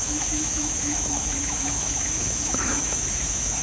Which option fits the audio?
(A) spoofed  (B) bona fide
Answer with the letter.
A